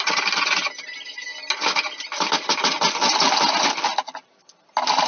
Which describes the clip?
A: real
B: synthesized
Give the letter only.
A